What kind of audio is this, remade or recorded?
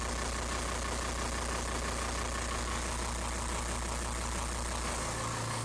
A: recorded